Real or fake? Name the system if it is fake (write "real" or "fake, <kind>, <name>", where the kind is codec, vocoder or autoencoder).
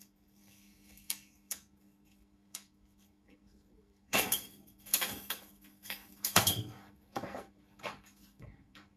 fake, codec, SNAC